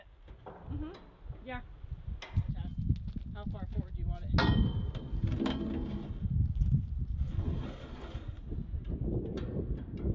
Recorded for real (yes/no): yes